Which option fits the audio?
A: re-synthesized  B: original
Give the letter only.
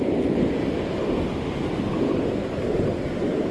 B